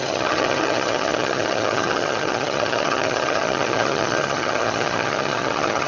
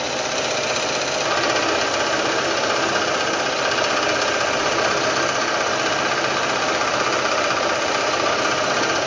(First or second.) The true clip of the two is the second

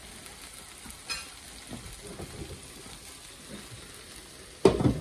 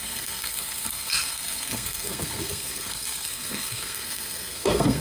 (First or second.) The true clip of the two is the first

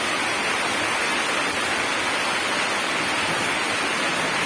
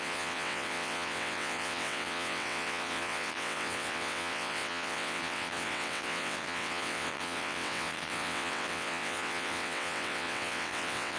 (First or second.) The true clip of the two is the first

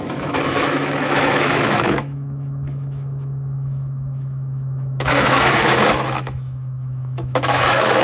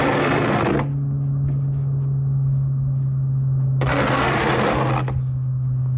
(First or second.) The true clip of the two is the second